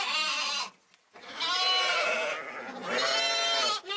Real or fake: real